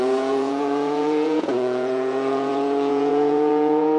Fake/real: fake